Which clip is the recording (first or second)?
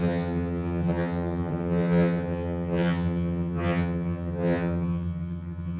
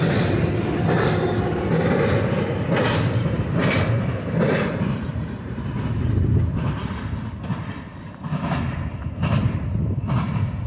second